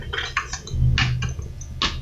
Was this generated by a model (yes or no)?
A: no